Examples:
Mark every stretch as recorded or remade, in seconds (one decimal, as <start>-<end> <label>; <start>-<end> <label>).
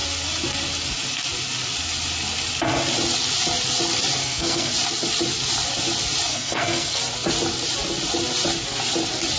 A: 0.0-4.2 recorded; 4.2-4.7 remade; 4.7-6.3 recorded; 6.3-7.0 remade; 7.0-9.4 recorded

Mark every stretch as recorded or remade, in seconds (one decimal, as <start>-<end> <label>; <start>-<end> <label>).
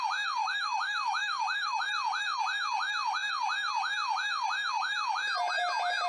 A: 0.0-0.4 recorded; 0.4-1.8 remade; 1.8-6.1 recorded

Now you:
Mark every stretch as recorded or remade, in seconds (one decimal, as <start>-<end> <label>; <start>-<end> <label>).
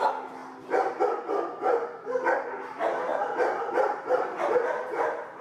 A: 0.0-3.1 recorded; 3.1-3.7 remade; 3.7-5.4 recorded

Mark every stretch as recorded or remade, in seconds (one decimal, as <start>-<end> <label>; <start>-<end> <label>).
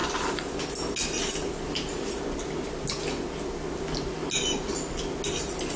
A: 0.0-5.8 recorded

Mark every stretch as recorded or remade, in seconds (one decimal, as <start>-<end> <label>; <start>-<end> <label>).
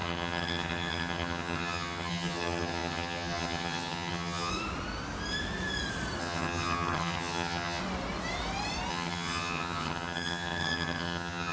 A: 0.0-4.5 remade; 4.5-6.2 recorded; 6.2-7.8 remade; 7.8-8.9 recorded; 8.9-11.5 remade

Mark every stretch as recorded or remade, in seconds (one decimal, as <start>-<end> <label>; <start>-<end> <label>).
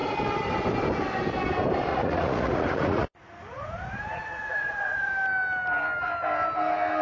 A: 0.0-1.9 recorded; 1.9-5.1 remade; 5.1-7.0 recorded